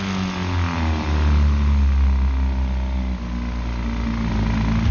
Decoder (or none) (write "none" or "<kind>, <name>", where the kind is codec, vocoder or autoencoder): none